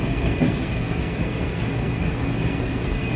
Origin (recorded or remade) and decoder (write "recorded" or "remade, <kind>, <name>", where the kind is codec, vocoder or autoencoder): remade, codec, SNAC